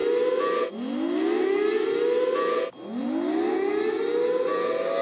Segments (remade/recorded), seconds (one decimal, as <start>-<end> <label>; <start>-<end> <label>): 0.0-5.0 recorded